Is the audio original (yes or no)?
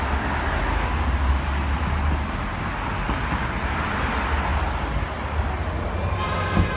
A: yes